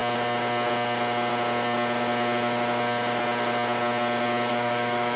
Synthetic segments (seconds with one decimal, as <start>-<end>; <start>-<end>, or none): 4.5-5.2

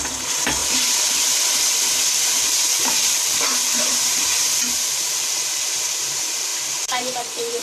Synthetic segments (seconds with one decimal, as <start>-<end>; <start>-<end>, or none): 0.0-7.6